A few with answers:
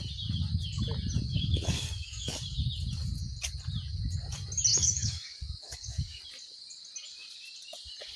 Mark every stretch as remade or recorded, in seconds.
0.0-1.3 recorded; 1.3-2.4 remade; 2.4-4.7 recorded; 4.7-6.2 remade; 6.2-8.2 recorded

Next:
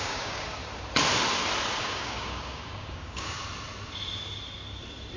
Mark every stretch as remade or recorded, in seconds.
0.0-0.6 remade; 0.6-1.8 recorded; 1.8-3.4 remade; 3.4-5.2 recorded

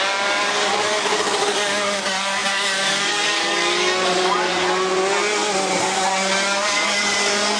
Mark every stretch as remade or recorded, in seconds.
0.0-4.5 remade; 4.5-5.8 recorded; 5.8-7.6 remade

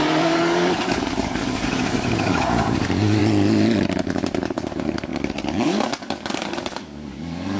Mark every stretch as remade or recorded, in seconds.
0.0-3.2 remade; 3.2-4.4 recorded; 4.4-7.6 remade

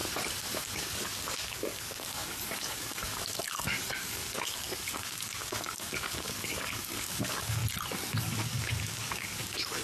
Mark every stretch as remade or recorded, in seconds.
0.0-0.6 recorded; 0.6-7.6 remade; 7.6-8.2 recorded; 8.2-9.8 remade

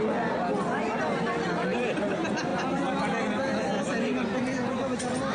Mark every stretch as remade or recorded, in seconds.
0.0-5.3 recorded

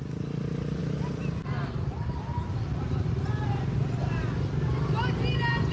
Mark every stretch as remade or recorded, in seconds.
0.0-5.7 recorded

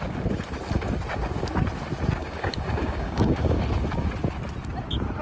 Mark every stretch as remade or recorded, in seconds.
0.0-2.2 recorded; 2.2-3.6 remade; 3.6-5.2 recorded